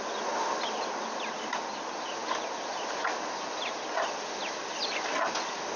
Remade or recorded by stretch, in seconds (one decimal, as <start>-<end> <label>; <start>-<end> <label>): 0.0-5.8 recorded

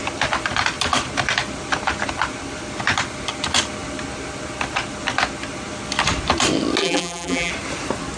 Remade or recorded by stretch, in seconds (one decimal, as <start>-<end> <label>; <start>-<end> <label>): 0.0-6.8 recorded; 6.8-7.5 remade; 7.5-8.2 recorded

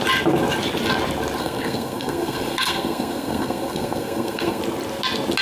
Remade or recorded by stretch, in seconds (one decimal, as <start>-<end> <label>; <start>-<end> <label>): 0.0-1.4 recorded; 1.4-4.6 remade; 4.6-5.4 recorded